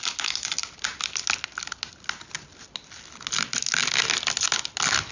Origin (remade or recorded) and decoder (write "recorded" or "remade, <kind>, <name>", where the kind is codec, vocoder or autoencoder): recorded